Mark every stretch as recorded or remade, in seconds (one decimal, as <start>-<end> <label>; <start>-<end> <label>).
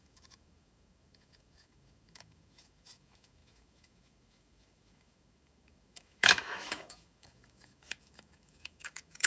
0.0-9.3 remade